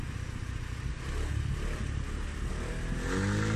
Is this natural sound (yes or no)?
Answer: yes